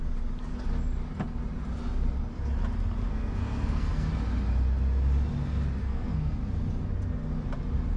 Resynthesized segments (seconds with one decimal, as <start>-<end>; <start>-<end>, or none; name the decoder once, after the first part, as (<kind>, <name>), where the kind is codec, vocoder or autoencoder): 3.1-4.1 (codec, SNAC); 5.8-6.4